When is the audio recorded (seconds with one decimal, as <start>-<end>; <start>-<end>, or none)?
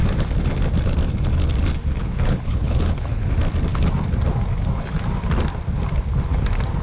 0.0-2.0; 3.3-6.8